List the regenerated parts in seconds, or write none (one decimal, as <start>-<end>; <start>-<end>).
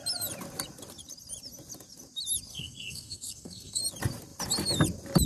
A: 2.5-3.8